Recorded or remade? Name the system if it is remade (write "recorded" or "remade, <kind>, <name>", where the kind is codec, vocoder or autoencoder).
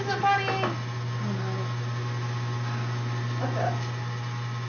recorded